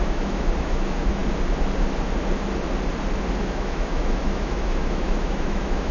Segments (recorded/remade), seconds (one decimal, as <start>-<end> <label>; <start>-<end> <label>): 0.0-1.2 remade; 1.2-3.4 recorded; 3.4-5.9 remade